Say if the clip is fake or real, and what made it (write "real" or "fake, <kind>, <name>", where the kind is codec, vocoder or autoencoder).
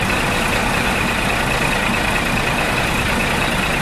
real